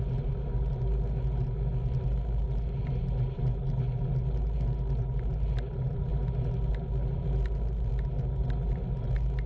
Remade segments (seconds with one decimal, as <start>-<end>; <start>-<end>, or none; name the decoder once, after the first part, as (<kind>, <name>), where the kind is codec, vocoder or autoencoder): none